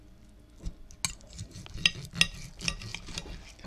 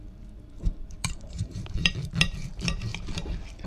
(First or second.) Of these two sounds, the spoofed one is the second